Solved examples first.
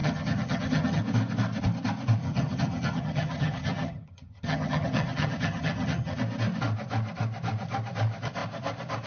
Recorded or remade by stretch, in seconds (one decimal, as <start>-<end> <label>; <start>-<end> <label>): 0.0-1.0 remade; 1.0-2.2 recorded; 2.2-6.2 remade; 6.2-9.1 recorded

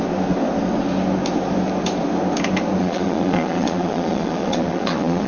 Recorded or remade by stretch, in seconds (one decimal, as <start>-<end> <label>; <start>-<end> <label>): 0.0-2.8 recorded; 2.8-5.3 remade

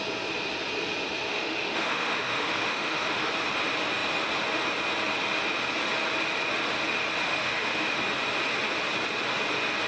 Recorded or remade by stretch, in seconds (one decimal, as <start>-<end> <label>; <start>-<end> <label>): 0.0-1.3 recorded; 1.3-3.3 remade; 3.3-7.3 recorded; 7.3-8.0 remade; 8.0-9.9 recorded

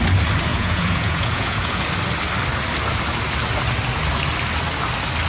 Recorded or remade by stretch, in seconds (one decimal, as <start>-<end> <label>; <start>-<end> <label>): 0.0-0.5 recorded; 0.5-1.8 remade; 1.8-5.3 recorded